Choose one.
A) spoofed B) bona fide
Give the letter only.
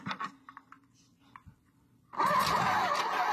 B